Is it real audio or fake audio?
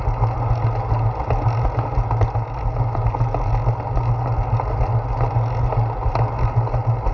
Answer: real